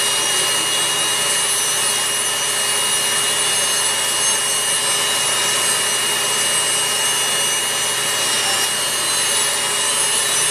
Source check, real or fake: real